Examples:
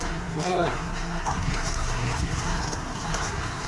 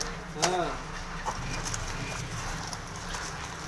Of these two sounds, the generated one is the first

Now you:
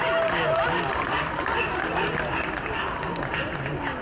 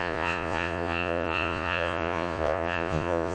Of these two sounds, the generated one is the second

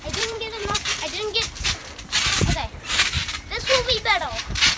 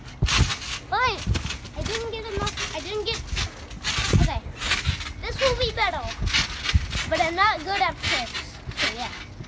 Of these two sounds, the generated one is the first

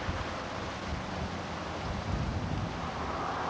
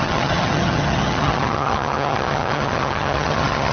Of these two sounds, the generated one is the second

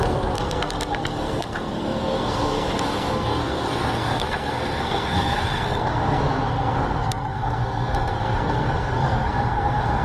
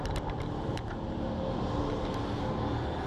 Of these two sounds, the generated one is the first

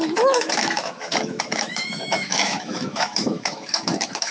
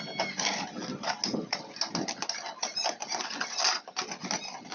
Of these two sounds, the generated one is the first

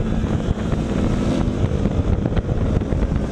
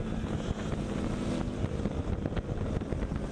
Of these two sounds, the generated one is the first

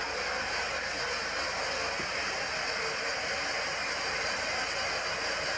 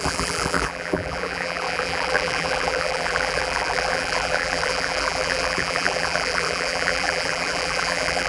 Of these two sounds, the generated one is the second